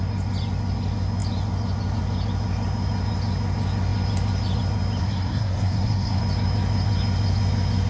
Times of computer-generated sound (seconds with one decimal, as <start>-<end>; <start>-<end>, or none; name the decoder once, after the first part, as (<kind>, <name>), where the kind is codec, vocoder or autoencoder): 5.0-6.2 (codec, SNAC)